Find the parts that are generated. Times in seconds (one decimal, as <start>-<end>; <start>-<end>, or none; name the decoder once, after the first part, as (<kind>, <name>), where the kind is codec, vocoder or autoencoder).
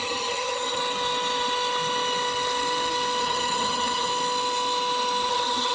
0.0-0.8 (vocoder, HiFi-GAN); 3.2-4.1; 5.3-5.7